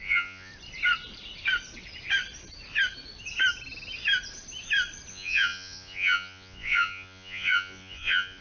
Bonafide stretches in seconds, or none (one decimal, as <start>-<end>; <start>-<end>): 0.5-5.1